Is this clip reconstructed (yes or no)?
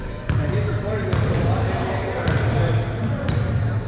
no